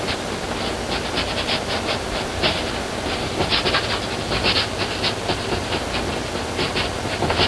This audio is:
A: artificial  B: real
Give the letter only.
B